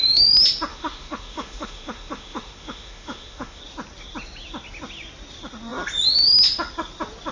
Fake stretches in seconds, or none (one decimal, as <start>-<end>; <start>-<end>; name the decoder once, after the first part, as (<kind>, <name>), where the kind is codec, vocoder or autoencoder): 0.7-3.6 (autoencoder, DAC-VAE)